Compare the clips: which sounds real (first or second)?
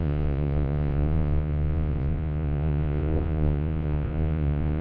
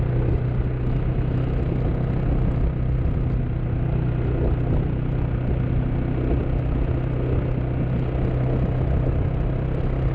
second